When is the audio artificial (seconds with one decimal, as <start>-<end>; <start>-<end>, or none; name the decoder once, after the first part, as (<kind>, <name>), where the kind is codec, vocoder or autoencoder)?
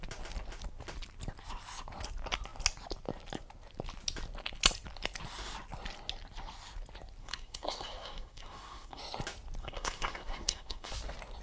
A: 7.2-9.0 (codec, SNAC); 9.6-10.9